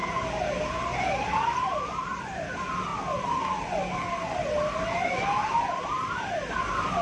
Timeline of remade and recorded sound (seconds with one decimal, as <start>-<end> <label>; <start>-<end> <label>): 0.0-2.9 remade; 2.9-5.8 recorded; 5.8-7.0 remade